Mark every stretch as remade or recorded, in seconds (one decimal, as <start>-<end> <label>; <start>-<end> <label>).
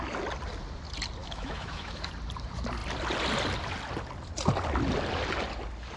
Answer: 0.0-1.2 recorded; 1.2-2.1 remade; 2.1-6.0 recorded